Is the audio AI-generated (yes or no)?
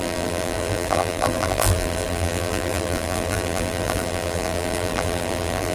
yes